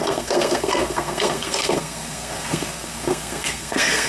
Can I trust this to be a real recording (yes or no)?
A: no